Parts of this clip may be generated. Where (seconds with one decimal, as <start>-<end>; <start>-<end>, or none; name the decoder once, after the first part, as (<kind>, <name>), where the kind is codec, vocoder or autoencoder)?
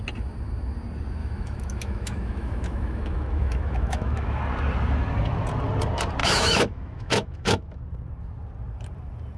1.2-4.4 (autoencoder, DAC-VAE); 6.2-7.8